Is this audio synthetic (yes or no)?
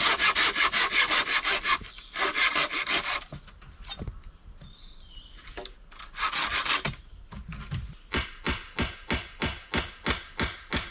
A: no